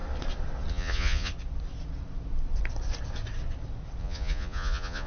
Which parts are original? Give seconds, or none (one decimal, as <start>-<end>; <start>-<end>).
0.0-0.7; 1.3-4.0